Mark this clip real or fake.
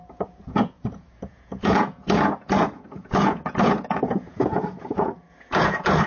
fake